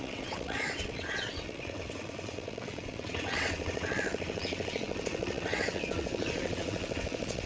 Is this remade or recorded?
remade